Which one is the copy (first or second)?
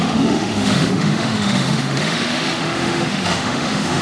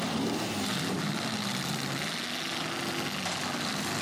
first